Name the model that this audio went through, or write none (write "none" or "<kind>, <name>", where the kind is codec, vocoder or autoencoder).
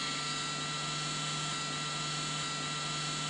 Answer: none